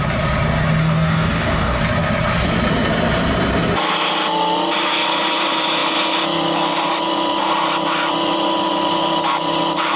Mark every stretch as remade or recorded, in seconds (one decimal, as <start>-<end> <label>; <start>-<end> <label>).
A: 0.0-0.8 recorded; 0.8-1.8 remade; 1.8-10.0 recorded